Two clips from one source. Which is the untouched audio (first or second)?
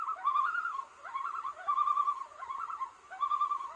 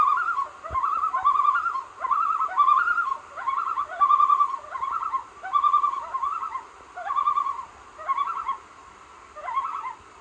second